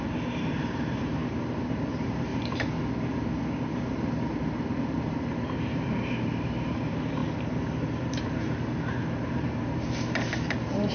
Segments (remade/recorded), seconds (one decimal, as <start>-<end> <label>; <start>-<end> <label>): 0.0-2.3 remade; 2.3-5.0 recorded; 5.0-10.9 remade